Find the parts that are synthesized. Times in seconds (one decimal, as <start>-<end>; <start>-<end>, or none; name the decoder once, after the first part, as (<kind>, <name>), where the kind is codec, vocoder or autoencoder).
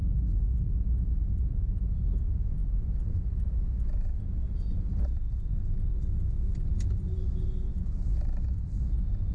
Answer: none